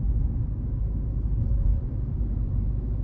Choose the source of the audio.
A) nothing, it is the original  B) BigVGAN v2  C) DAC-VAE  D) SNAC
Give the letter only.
A